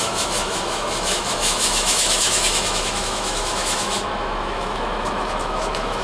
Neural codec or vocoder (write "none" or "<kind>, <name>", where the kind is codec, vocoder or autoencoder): autoencoder, DAC-VAE